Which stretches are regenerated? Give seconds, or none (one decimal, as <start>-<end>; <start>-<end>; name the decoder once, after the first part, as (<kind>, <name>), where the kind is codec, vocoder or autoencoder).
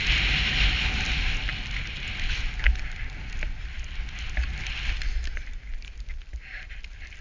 5.7-6.7 (vocoder, BigVGAN v2)